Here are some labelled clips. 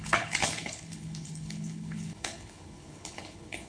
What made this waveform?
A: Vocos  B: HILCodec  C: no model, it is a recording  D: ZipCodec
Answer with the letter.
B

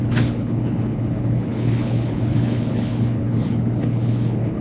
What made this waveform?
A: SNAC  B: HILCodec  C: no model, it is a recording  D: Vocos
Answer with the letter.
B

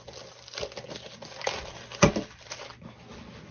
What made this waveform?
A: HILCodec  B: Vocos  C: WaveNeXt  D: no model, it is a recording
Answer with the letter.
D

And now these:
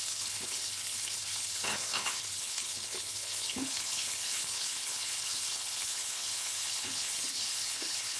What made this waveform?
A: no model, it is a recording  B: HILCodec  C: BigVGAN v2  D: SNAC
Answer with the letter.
B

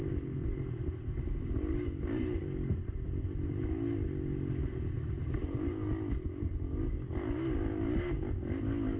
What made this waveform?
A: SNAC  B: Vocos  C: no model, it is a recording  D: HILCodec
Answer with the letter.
C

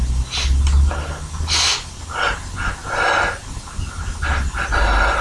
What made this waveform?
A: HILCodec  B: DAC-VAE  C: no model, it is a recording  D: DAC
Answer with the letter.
C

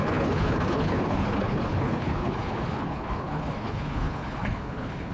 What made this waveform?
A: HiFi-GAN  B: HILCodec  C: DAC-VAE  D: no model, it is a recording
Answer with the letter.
B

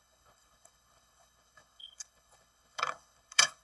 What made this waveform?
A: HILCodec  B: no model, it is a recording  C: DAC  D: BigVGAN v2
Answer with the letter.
A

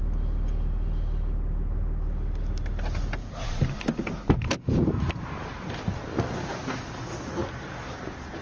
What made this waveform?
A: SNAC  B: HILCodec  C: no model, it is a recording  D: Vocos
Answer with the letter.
C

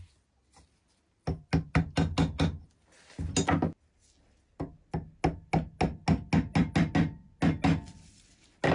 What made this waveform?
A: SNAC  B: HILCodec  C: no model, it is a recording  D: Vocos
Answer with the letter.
C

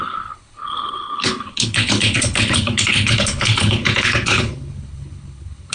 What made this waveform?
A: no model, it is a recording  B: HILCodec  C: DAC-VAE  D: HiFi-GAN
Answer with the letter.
B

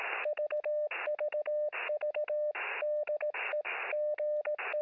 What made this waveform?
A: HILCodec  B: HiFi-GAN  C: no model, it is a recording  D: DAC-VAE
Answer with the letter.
C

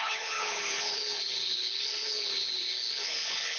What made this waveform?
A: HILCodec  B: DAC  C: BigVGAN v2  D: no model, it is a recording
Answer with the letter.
A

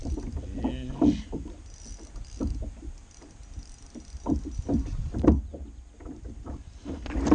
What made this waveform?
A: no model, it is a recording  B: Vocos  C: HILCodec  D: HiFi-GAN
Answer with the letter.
A